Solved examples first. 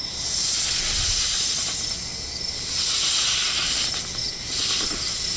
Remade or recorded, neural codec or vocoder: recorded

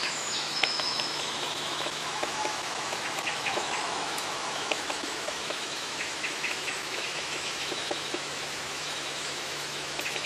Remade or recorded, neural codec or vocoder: remade, autoencoder, DAC-VAE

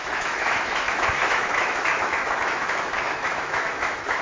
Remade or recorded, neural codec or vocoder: remade, autoencoder, DAC-VAE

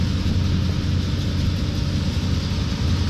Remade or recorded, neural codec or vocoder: recorded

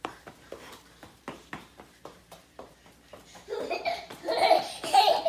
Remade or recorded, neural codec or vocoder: remade, vocoder, BigVGAN v2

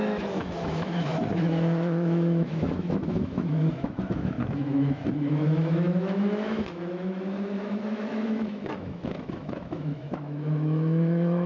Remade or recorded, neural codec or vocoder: remade, autoencoder, DAC-VAE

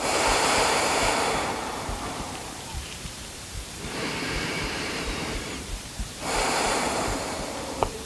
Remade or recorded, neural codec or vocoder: remade, vocoder, BigVGAN v2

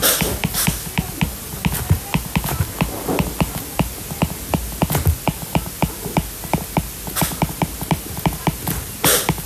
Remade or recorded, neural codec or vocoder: recorded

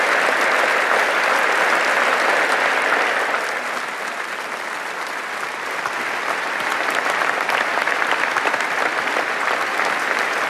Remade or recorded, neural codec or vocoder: recorded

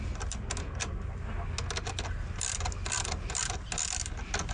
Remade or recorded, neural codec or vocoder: recorded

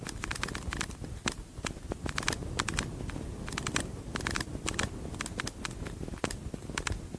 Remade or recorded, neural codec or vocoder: recorded